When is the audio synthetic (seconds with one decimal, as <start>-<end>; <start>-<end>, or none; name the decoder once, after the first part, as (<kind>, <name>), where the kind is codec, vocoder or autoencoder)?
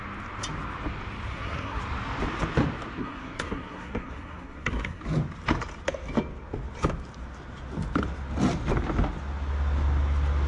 1.3-1.8 (codec, SNAC); 3.0-5.0